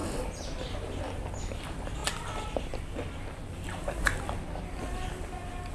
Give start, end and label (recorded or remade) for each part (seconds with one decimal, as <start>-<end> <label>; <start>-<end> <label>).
0.0-5.7 recorded